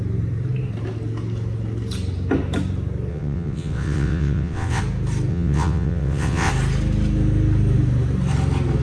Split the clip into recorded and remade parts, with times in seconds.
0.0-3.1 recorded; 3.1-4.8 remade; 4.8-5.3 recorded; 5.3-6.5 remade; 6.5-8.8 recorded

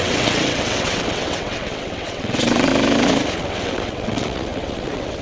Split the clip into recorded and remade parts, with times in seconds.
0.0-2.7 remade; 2.7-3.4 recorded; 3.4-5.2 remade

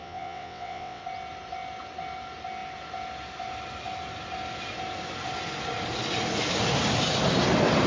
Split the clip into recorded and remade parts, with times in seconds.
0.0-1.0 remade; 1.0-7.9 recorded

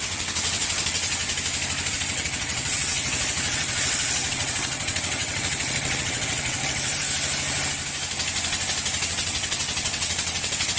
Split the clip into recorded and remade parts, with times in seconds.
0.0-1.2 remade; 1.2-1.9 recorded; 1.9-6.9 remade; 6.9-9.1 recorded; 9.1-10.8 remade

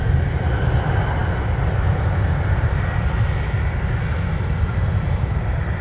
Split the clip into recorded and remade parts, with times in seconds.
0.0-5.8 recorded

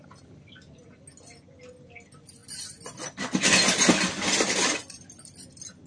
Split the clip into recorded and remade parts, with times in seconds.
0.0-5.9 recorded

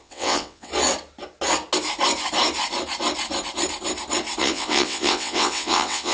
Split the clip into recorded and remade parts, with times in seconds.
0.0-0.7 remade; 0.7-4.4 recorded; 4.4-6.1 remade

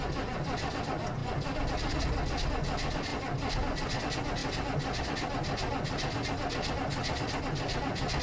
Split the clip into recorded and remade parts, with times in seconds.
0.0-8.2 recorded